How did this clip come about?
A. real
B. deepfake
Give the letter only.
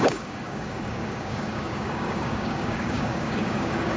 B